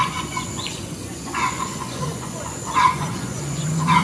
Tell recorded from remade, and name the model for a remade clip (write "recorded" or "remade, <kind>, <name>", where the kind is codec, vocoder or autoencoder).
remade, vocoder, Vocos